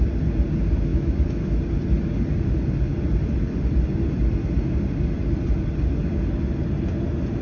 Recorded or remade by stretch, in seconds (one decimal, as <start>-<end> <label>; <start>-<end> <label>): 0.0-0.9 recorded; 0.9-1.6 remade; 1.6-7.4 recorded